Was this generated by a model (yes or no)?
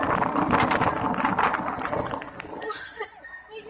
no